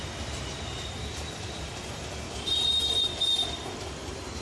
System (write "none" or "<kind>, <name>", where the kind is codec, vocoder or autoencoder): vocoder, BigVGAN v2